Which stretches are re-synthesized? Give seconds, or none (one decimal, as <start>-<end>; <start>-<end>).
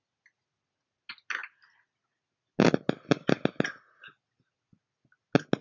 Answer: none